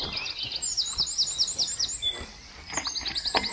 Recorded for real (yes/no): yes